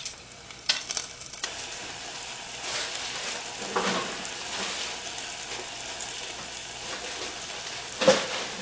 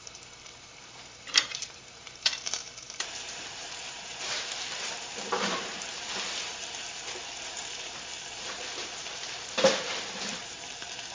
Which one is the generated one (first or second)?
second